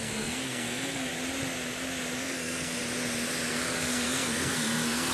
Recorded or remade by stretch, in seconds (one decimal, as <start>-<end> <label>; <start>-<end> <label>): 0.0-1.1 remade; 1.1-2.2 recorded; 2.2-2.8 remade; 2.8-3.5 recorded; 3.5-5.1 remade